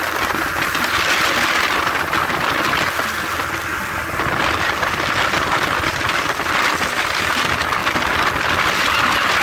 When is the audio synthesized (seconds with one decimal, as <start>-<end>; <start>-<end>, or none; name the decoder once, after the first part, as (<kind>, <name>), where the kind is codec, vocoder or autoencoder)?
none